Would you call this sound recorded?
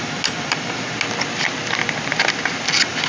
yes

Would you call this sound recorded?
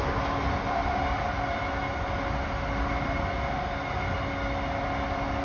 yes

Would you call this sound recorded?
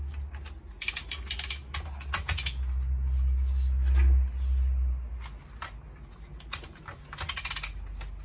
yes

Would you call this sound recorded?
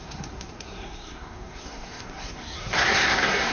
no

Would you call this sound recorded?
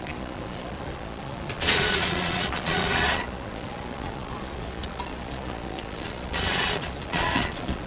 no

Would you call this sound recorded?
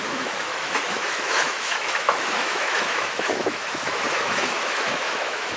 no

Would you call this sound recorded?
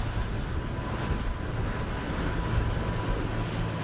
yes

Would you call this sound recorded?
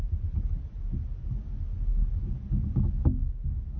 yes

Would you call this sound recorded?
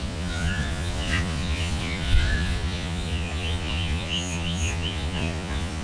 no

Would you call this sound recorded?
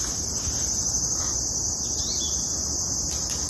yes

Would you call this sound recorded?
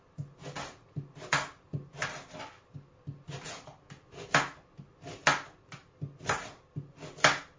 yes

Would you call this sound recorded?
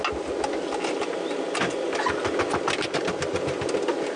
yes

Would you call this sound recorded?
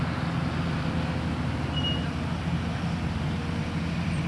yes